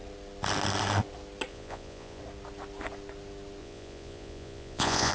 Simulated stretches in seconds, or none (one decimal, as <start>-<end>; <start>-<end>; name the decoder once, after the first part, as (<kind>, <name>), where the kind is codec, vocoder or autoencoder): 1.5-2.2 (vocoder, Vocos); 3.6-5.1